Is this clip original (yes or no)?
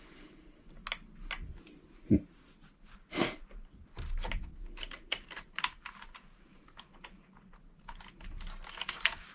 yes